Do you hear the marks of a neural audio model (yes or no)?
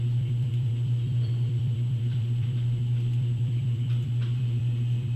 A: yes